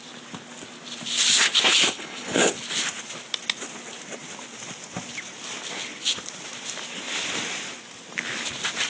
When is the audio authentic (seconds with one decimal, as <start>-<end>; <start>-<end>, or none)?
0.0-1.7; 2.5-8.9